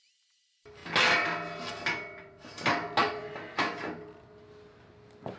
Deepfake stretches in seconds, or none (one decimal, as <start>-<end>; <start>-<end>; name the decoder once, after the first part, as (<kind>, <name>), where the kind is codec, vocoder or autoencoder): none